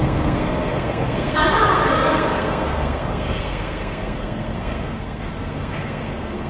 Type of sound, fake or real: fake